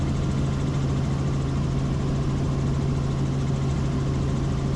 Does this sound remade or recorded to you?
recorded